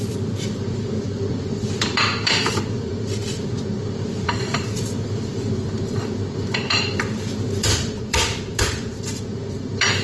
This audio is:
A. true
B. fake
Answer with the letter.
B